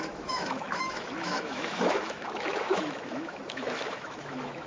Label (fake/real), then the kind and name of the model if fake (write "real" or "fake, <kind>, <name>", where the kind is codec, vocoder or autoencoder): fake, autoencoder, DAC-VAE